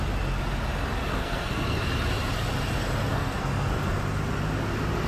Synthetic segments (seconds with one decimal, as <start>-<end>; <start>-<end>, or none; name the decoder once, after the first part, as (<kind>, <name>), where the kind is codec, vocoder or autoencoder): 1.2-1.8 (codec, SNAC); 3.1-3.8